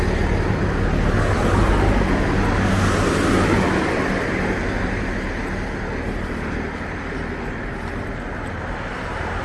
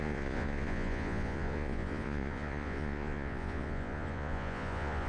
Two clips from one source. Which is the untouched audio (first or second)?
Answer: first